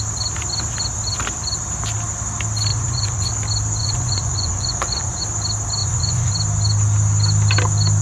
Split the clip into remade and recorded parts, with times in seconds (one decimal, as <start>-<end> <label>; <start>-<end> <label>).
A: 0.0-2.7 recorded; 2.7-3.3 remade; 3.3-3.8 recorded; 3.8-5.2 remade; 5.2-5.8 recorded; 5.8-6.3 remade; 6.3-8.0 recorded